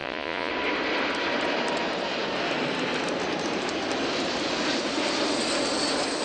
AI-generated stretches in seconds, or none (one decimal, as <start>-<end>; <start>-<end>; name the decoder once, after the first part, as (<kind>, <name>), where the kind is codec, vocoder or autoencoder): 0.0-0.5 (vocoder, Vocos)